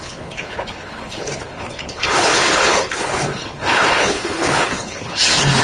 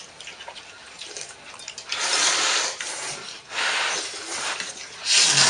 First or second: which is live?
second